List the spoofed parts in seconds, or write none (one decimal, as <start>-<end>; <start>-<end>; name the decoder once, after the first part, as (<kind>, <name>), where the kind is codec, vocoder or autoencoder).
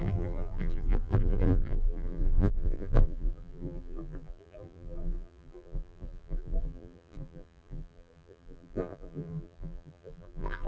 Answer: 0.0-10.7 (vocoder, BigVGAN v2)